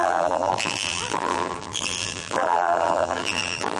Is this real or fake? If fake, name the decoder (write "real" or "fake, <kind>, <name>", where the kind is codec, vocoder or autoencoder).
fake, vocoder, BigVGAN v2